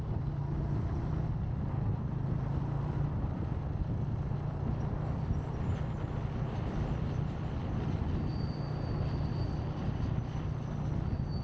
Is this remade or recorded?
recorded